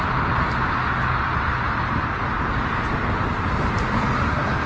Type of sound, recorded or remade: recorded